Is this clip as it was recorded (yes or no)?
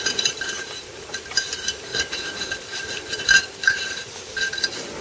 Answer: no